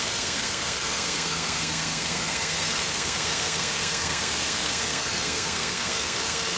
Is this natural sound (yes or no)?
no